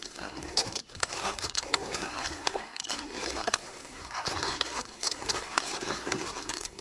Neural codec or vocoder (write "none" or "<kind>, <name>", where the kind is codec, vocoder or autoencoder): codec, SNAC